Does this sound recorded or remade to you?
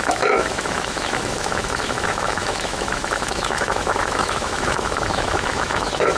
remade